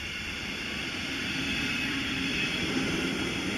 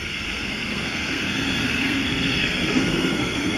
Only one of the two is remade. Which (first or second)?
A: second